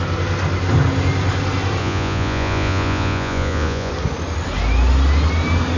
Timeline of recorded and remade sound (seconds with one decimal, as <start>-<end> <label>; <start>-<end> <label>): 0.0-1.8 recorded; 1.8-3.9 remade; 3.9-5.8 recorded